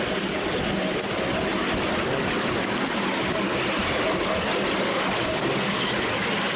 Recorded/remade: recorded